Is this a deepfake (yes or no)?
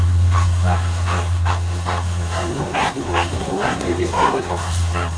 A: yes